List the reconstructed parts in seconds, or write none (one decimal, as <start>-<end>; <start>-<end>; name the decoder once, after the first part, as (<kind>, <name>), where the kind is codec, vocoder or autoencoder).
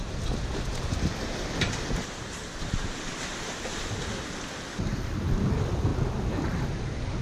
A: 0.0-3.1 (vocoder, BigVGAN v2); 5.0-5.9